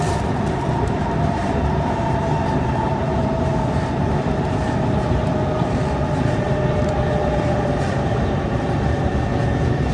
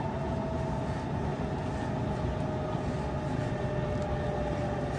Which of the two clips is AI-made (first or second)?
first